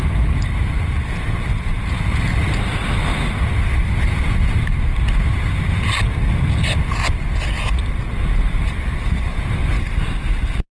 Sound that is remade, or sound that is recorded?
recorded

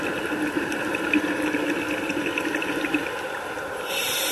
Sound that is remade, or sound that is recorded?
recorded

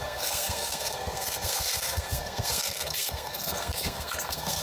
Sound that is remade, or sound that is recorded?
remade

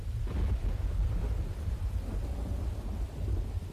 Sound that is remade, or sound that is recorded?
recorded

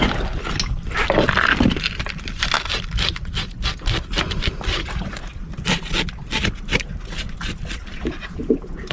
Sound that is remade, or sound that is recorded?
recorded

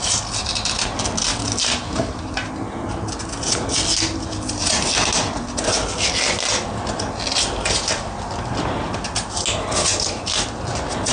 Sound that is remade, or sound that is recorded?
recorded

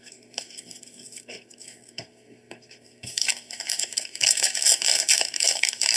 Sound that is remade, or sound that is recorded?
remade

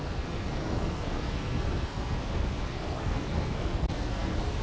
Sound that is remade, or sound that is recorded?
remade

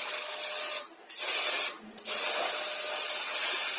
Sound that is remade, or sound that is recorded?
recorded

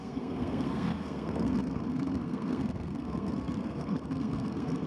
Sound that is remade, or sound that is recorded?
remade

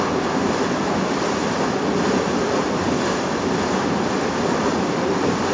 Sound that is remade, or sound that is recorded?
recorded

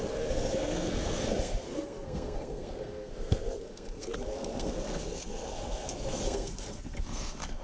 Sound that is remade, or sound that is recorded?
remade